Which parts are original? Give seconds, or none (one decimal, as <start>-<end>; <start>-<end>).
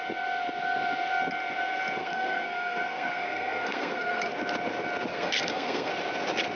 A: 0.0-2.0; 4.3-5.1; 5.9-6.6